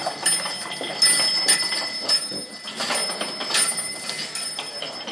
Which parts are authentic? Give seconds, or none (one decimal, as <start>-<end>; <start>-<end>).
0.0-5.1